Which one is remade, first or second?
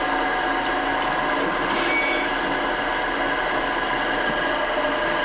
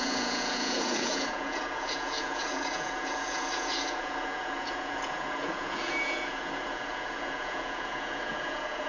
second